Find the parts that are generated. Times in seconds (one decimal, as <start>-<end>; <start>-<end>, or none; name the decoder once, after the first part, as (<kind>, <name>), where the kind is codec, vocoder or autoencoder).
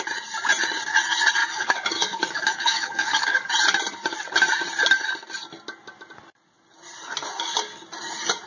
1.4-3.5 (codec, DAC)